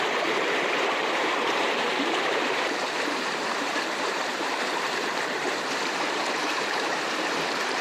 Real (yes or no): no